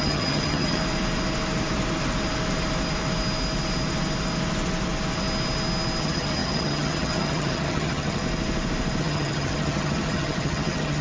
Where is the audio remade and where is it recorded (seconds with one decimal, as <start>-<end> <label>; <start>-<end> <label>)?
0.0-0.8 remade; 0.8-6.0 recorded; 6.0-8.2 remade; 8.2-9.0 recorded; 9.0-11.0 remade